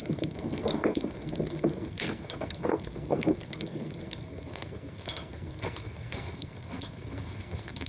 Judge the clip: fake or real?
fake